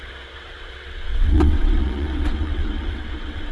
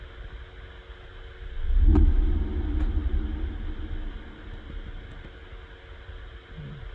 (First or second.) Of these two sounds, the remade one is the first